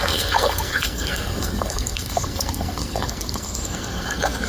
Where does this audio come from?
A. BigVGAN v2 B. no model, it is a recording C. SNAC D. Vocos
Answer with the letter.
C